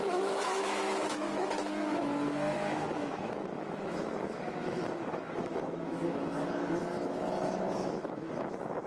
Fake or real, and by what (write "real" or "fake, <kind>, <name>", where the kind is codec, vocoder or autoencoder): fake, autoencoder, DAC-VAE